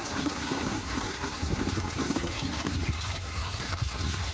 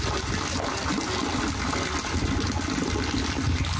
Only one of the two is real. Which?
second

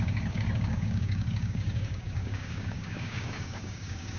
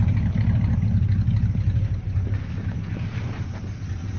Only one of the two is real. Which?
second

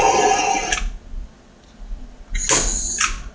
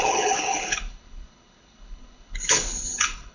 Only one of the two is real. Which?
first